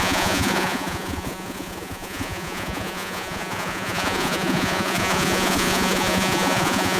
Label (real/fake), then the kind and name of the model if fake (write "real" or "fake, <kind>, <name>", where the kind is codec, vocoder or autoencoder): fake, vocoder, Vocos